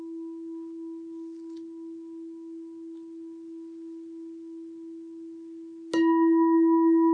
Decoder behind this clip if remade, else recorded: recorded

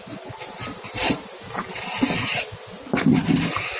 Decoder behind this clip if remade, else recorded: recorded